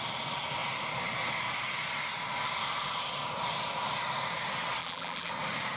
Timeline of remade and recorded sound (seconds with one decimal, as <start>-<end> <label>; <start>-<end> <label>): 0.0-4.8 recorded; 4.8-5.3 remade; 5.3-5.8 recorded